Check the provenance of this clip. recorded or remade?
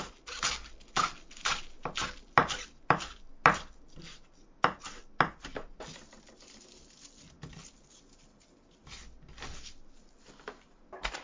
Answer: recorded